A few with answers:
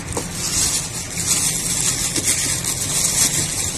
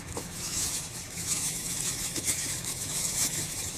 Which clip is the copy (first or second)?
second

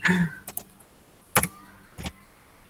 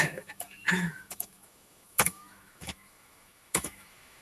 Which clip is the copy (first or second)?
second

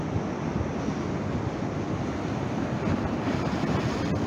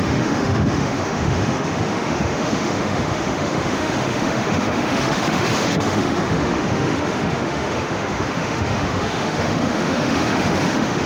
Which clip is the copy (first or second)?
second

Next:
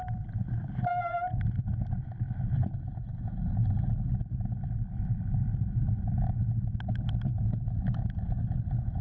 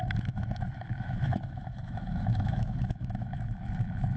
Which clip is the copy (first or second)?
second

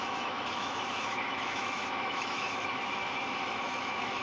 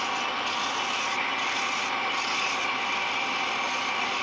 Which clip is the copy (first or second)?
first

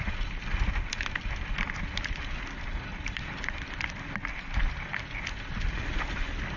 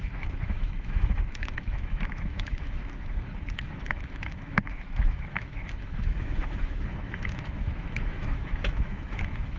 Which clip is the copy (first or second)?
second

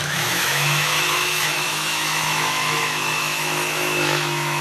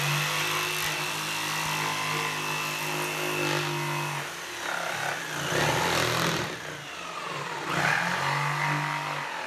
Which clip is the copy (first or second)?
first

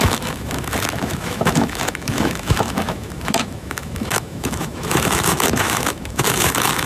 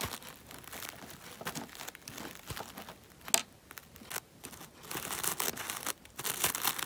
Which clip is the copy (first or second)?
first